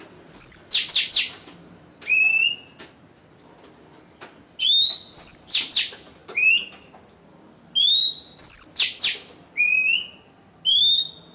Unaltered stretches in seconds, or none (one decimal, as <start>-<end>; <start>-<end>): 0.0-11.3